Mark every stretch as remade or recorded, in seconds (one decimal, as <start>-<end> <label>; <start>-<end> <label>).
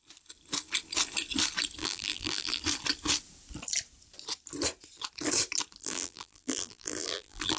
0.0-1.8 recorded; 1.8-2.6 remade; 2.6-5.8 recorded; 5.8-7.6 remade